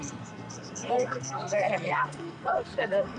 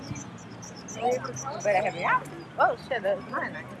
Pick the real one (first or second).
second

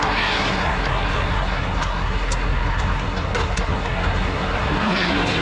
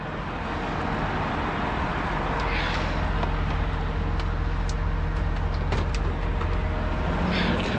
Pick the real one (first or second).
second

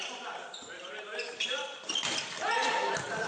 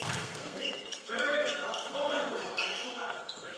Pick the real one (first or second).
first